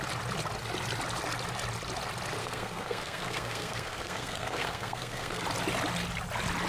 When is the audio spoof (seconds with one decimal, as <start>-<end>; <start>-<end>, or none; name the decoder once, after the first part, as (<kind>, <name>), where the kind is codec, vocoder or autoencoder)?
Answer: 2.4-5.4 (codec, SNAC)